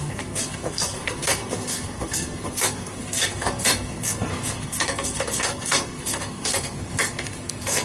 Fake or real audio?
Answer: fake